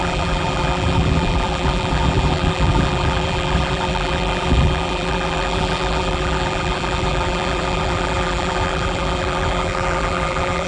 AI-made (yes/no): yes